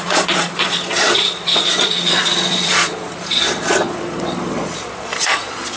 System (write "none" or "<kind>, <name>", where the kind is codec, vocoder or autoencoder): vocoder, Vocos